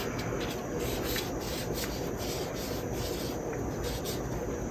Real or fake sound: real